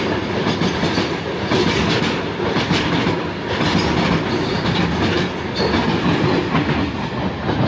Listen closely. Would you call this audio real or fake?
real